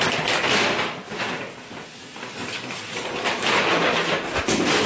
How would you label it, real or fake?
real